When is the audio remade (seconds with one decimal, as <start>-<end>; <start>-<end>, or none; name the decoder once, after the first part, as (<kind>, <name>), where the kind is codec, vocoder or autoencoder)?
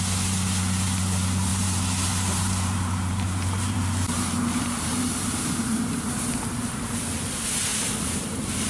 1.5-6.5 (vocoder, BigVGAN v2); 7.7-8.7